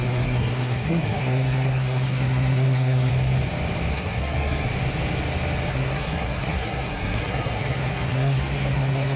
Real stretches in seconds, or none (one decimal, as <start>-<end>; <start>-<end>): 3.1-3.9; 4.7-5.7